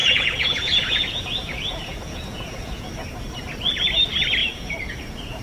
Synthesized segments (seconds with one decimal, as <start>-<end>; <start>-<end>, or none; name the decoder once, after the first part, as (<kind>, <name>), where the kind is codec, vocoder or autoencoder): 0.0-3.2 (vocoder, Vocos); 4.4-5.4